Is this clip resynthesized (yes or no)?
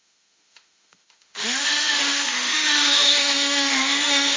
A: yes